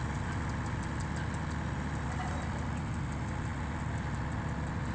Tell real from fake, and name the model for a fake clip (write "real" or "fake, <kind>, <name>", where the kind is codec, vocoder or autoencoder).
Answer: real